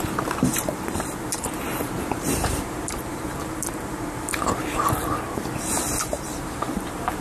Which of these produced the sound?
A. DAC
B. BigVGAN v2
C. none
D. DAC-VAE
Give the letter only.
B